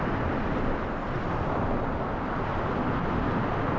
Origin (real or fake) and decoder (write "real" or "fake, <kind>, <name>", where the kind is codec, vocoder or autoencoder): real